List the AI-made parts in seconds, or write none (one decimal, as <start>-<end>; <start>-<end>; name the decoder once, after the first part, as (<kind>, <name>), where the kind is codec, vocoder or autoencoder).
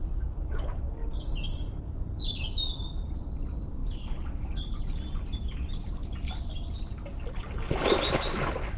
none